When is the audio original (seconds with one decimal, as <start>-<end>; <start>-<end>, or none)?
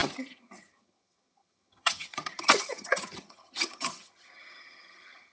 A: none